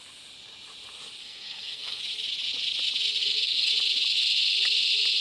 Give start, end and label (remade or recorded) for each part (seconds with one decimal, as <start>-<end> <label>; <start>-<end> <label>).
0.0-1.2 recorded; 1.2-2.0 remade; 2.0-3.2 recorded; 3.2-3.7 remade; 3.7-5.2 recorded